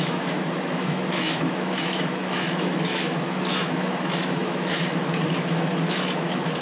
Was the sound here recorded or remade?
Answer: remade